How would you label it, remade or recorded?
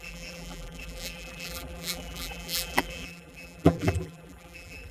remade